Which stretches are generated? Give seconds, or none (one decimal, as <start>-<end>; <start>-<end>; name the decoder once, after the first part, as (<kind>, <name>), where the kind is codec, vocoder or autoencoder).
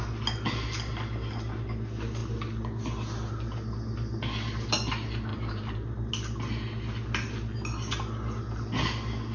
5.3-6.1 (vocoder, BigVGAN v2)